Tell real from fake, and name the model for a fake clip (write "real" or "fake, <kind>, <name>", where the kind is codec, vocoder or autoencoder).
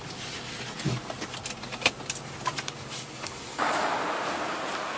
real